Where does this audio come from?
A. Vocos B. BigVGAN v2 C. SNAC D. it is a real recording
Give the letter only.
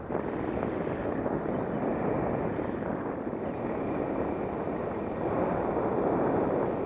D